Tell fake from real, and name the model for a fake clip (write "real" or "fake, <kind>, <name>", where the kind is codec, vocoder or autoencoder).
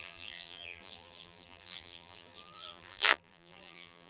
fake, vocoder, BigVGAN v2